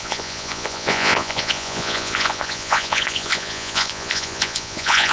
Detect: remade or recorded remade